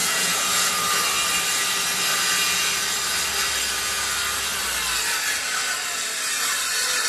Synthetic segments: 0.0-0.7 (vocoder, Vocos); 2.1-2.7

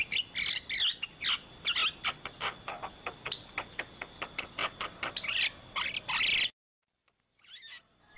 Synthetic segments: none

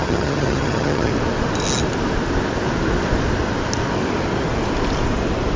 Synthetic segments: 0.0-1.1 (vocoder, HiFi-GAN)

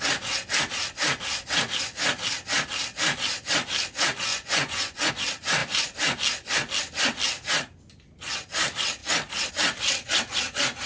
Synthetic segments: 4.3-5.1 (vocoder, Vocos)

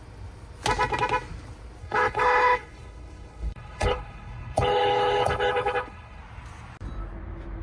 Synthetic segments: 1.8-6.2 (codec, HILCodec)

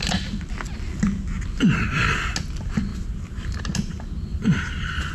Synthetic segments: 2.9-3.6 (vocoder, BigVGAN v2); 4.3-5.1

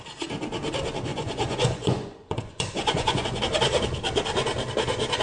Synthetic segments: 1.1-3.4 (vocoder, Vocos)